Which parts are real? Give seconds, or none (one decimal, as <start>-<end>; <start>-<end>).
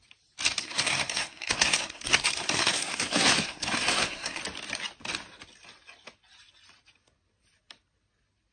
0.0-0.6; 4.4-8.5